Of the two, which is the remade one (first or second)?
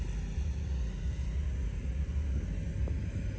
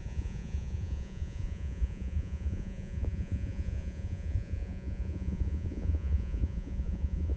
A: second